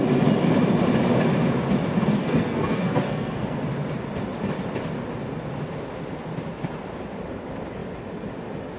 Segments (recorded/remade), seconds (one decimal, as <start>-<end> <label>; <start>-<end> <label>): 0.0-2.2 recorded; 2.2-3.6 remade; 3.6-8.8 recorded